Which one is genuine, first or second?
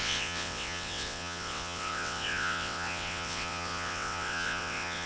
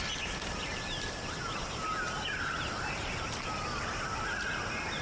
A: second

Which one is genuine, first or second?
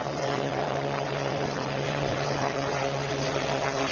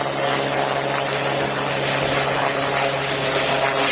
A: second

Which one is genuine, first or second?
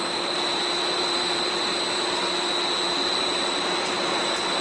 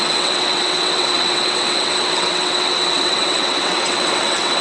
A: first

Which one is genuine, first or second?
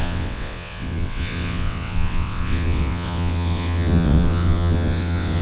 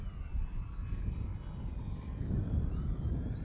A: second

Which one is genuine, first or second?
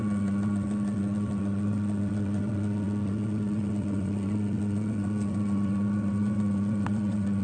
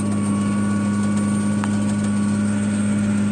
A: second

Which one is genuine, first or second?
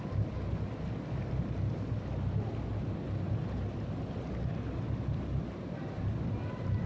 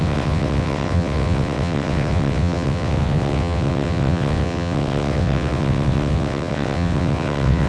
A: first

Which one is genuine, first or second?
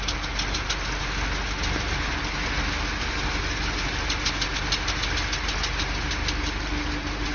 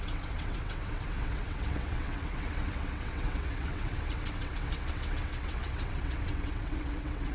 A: first